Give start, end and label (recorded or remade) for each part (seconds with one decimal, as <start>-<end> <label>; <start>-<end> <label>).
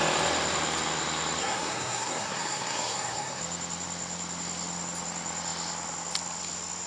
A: 0.0-1.4 recorded; 1.4-3.4 remade; 3.4-6.9 recorded